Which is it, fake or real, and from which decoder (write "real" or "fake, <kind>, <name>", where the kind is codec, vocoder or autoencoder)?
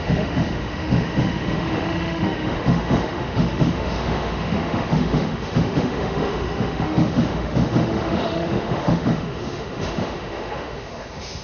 fake, autoencoder, DAC-VAE